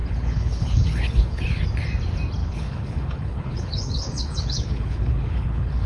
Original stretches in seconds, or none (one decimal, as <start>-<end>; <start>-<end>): 1.6-2.4